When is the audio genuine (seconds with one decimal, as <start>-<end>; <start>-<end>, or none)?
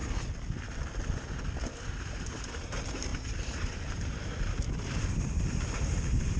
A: 0.0-2.0